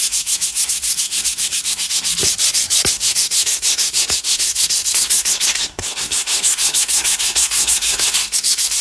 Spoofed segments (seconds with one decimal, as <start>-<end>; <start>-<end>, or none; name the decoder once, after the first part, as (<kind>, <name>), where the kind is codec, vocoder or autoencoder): 0.0-2.1 (codec, SNAC); 2.9-8.8